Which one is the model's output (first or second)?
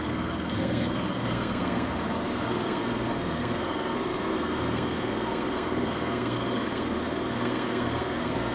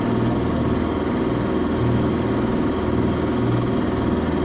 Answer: first